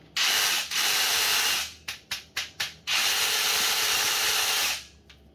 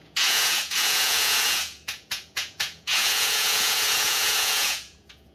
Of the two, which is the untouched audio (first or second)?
first